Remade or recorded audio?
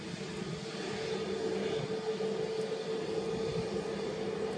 recorded